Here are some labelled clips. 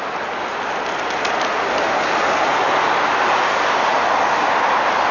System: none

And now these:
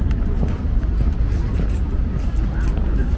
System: none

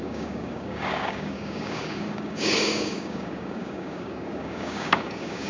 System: codec, DAC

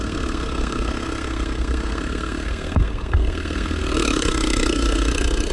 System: codec, SNAC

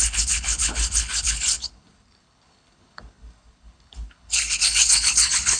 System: codec, HILCodec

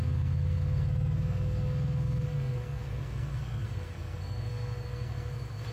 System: codec, SNAC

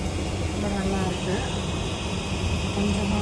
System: none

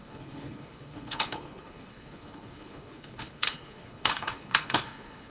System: codec, HILCodec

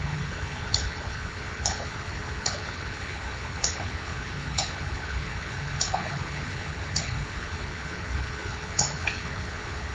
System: codec, HILCodec